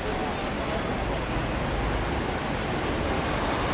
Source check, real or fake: real